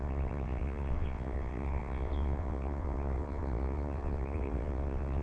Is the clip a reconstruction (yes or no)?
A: yes